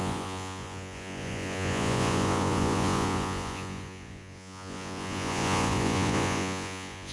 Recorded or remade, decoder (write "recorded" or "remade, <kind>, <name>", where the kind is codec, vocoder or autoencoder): remade, vocoder, Vocos